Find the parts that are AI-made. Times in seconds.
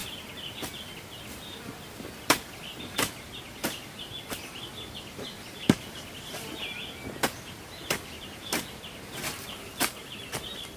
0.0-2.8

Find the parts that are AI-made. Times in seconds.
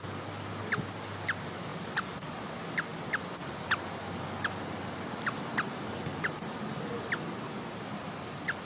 1.7-2.5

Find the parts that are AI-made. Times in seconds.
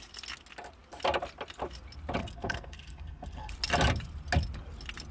2.2-3.5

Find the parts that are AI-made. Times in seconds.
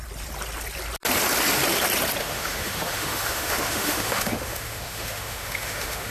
2.2-6.1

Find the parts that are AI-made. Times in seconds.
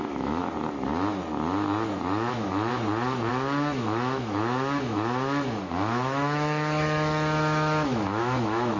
0.0-0.4; 2.3-2.7; 3.3-8.8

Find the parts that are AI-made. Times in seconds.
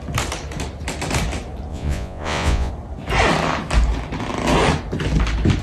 1.7-2.7